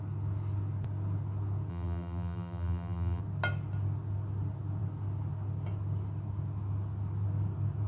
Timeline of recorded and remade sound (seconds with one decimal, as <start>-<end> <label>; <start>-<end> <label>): 0.0-1.7 recorded; 1.7-3.2 remade; 3.2-7.9 recorded